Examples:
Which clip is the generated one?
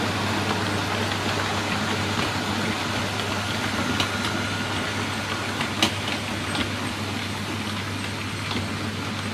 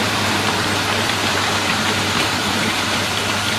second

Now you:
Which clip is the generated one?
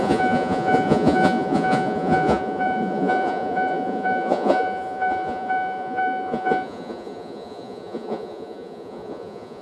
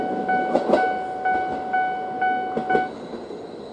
first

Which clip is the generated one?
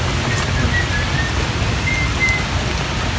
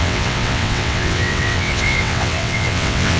second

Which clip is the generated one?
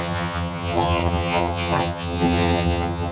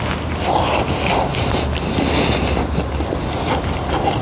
first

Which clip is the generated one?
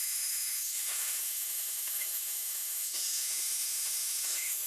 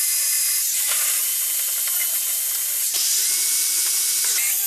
first